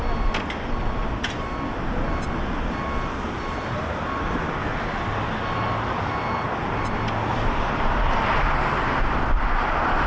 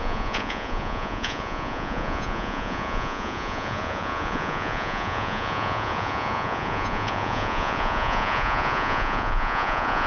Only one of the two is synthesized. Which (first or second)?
second